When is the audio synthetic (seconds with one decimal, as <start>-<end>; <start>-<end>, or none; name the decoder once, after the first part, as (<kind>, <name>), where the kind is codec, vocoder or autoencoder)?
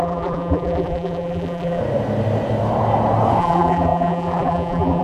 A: 0.0-1.8 (vocoder, BigVGAN v2); 3.4-5.0